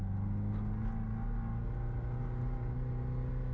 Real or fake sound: real